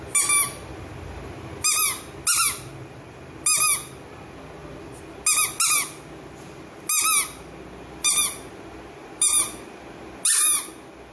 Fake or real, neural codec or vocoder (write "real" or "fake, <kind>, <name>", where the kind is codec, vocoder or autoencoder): real